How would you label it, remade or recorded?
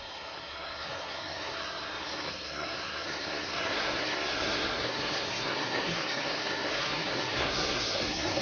remade